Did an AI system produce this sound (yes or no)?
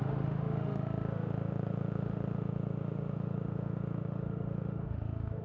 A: yes